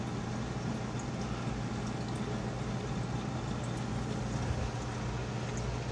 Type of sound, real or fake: real